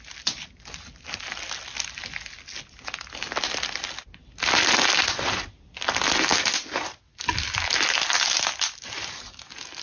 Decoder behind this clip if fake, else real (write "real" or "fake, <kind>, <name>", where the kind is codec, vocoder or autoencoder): real